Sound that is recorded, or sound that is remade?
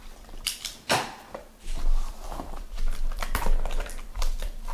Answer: remade